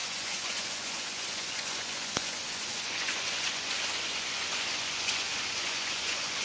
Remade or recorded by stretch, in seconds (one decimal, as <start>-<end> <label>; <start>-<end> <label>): 0.0-6.4 remade